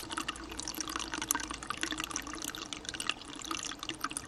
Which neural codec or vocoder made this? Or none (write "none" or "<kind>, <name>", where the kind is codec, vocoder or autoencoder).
none